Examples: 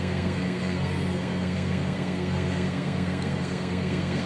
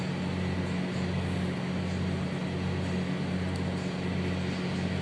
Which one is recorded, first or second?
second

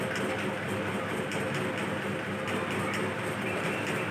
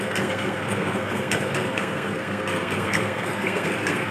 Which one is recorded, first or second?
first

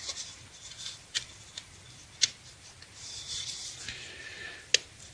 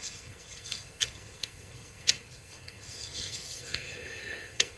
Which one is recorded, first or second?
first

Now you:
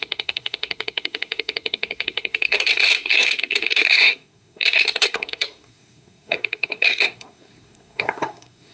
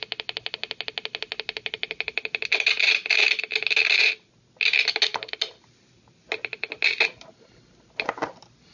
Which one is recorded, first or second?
second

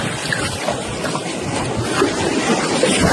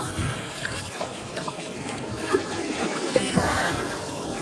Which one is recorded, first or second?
first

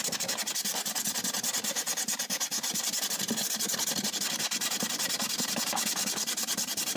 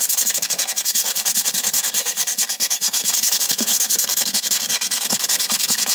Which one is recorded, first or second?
first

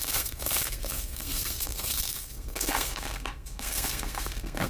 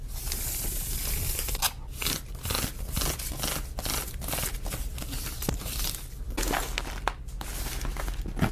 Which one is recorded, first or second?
second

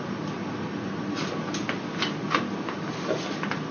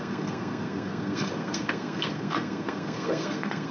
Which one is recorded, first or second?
first